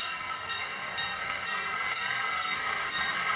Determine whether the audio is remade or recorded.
remade